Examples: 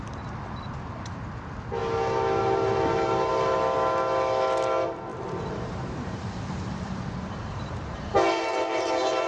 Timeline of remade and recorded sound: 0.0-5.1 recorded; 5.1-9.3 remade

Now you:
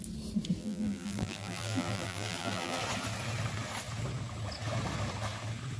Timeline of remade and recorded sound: 0.0-0.6 recorded; 0.6-2.8 remade; 2.8-5.8 recorded